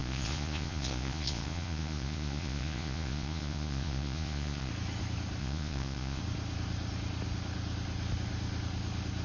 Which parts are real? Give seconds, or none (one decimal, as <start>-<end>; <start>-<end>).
4.7-5.4; 6.2-9.2